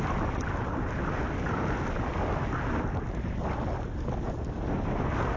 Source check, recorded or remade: recorded